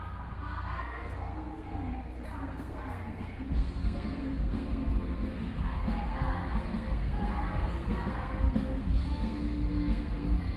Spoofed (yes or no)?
yes